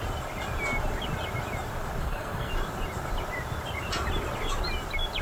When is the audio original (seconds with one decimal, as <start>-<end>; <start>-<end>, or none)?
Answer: 0.0-2.0; 2.5-5.2